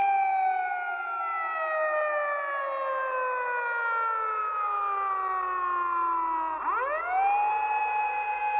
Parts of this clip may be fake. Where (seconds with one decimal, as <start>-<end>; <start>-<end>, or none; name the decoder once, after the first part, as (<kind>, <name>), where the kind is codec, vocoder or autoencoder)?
none